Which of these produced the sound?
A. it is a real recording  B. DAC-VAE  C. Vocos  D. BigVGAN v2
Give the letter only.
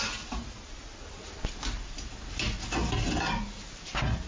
A